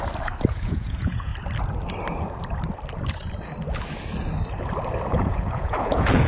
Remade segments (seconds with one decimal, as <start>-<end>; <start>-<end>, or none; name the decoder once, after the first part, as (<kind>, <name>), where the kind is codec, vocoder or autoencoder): 0.5-1.3 (vocoder, Vocos); 5.1-6.3